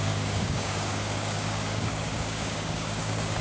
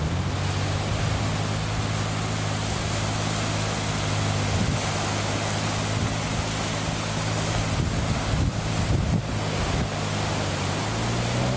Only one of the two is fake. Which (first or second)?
first